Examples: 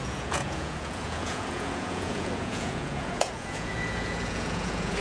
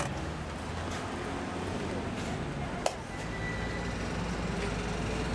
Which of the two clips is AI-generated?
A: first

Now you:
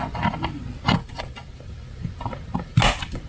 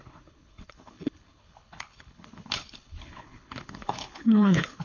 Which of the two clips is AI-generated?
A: second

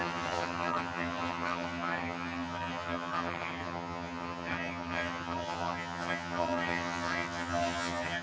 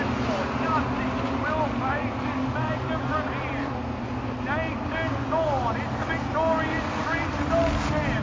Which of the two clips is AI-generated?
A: first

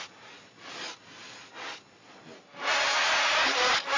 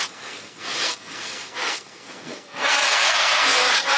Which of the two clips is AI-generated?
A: second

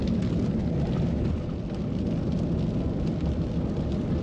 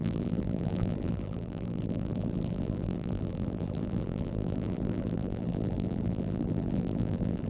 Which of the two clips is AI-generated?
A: second